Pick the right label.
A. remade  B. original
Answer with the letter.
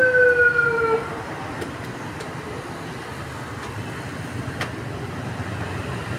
B